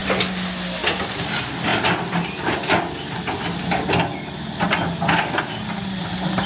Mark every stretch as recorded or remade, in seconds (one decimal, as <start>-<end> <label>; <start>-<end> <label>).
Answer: 0.0-6.5 recorded